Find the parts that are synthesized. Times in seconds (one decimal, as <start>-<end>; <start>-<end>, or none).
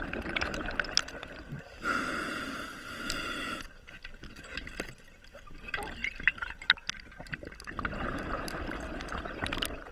none